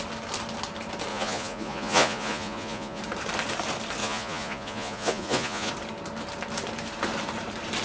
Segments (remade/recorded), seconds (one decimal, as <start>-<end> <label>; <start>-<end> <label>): 0.0-1.1 recorded; 1.1-3.0 remade; 3.0-4.0 recorded; 4.0-5.7 remade; 5.7-7.8 recorded